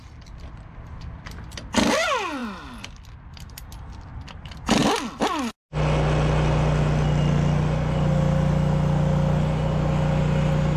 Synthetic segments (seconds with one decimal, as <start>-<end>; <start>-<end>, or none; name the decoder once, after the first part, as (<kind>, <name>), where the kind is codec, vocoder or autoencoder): none